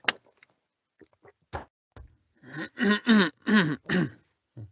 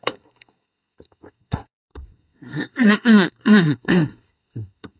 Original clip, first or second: first